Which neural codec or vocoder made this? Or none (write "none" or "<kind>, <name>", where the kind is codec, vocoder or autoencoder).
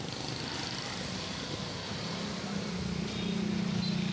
none